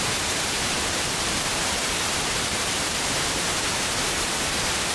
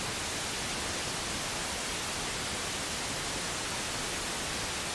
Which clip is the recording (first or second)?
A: second